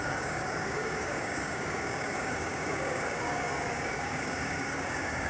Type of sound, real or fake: fake